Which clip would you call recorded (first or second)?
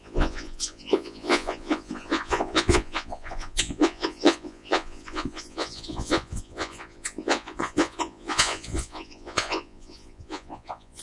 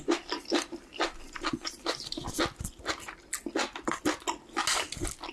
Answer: second